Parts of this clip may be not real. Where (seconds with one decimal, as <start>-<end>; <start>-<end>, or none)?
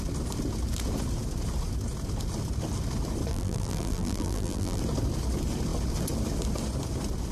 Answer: 3.3-4.8